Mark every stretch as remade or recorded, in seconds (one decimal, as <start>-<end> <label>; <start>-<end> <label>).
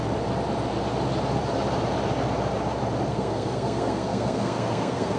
0.0-3.1 recorded; 3.1-5.2 remade